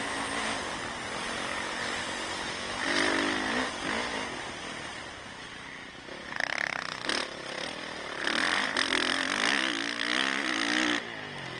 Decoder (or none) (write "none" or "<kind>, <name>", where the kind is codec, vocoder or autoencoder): none